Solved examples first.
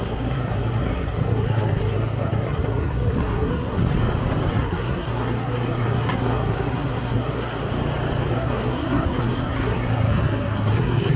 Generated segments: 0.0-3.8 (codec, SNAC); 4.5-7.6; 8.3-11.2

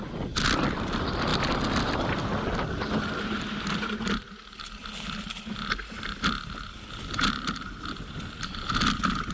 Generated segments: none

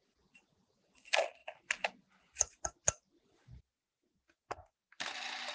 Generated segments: none

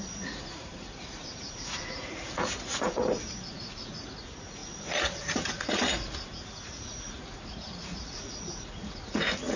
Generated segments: 0.0-3.0 (vocoder, Vocos); 3.5-9.6

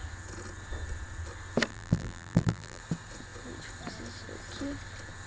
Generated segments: 1.7-2.8 (vocoder, BigVGAN v2)

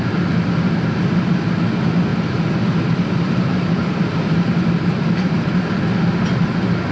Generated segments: 2.1-5.4 (vocoder, BigVGAN v2)

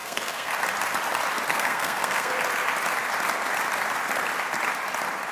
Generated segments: 0.0-0.5 (codec, SNAC); 1.5-2.3

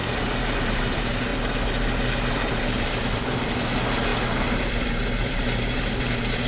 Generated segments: 0.6-1.3 (vocoder, BigVGAN v2); 2.3-6.5